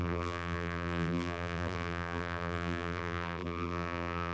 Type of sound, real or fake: fake